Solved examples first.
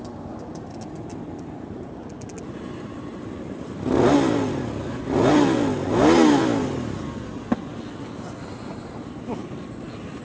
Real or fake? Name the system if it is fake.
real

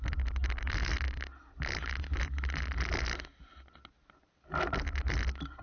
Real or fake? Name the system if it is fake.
real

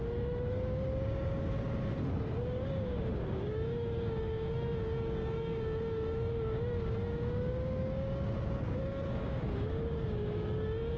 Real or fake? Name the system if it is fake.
fake, codec, DAC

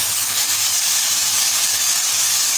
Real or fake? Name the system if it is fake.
fake, codec, DAC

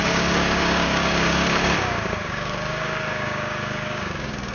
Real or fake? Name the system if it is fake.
fake, codec, DAC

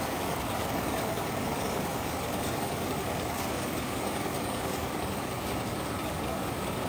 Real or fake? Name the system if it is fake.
fake, codec, DAC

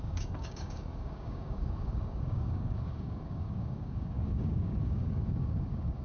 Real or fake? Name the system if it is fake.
fake, codec, DAC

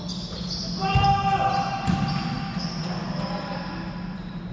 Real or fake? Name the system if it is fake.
real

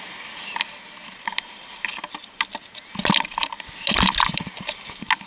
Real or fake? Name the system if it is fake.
real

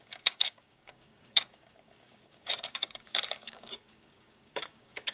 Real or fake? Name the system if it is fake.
fake, codec, DAC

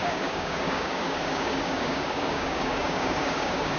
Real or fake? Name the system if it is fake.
fake, codec, DAC